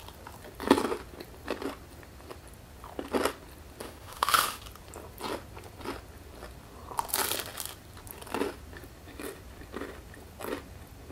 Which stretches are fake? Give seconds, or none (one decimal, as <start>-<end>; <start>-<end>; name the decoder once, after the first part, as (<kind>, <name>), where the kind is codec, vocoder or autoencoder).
3.8-4.6 (autoencoder, DAC-VAE)